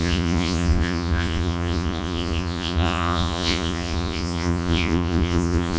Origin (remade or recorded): remade